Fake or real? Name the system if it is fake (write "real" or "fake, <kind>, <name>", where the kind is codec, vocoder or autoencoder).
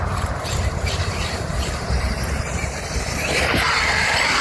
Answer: fake, vocoder, BigVGAN v2